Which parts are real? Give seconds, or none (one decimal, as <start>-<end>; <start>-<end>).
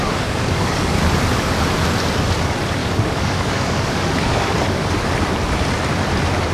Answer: 1.0-2.8; 5.0-6.5